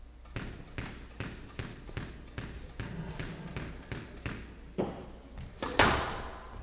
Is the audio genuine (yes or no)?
yes